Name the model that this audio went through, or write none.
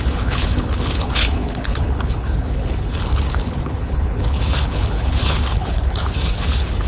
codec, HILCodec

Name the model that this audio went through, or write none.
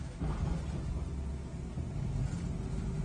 none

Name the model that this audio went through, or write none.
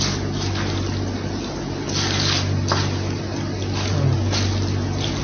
none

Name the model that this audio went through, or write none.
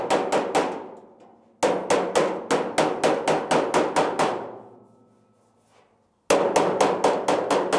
none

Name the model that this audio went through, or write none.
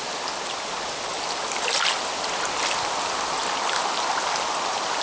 none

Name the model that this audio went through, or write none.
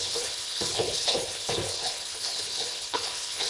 codec, HILCodec